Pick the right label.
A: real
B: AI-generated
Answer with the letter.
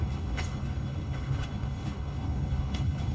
B